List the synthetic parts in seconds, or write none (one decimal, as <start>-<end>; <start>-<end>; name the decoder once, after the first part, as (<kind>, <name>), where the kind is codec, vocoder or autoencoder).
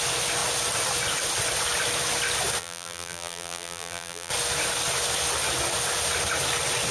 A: 2.6-4.3 (vocoder, BigVGAN v2)